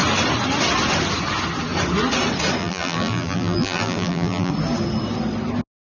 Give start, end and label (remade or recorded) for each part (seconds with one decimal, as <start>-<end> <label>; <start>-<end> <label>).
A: 0.0-2.6 recorded; 2.6-4.5 remade; 4.5-5.8 recorded